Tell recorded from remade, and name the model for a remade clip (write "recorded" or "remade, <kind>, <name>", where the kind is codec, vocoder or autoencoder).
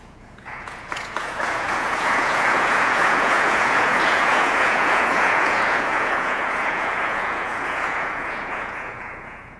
remade, vocoder, Vocos